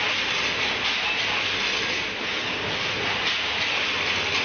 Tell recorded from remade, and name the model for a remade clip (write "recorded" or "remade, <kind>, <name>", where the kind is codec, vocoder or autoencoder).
recorded